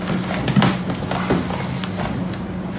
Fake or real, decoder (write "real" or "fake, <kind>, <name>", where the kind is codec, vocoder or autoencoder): real